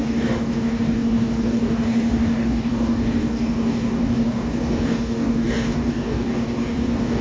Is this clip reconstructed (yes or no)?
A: yes